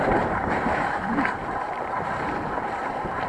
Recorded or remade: remade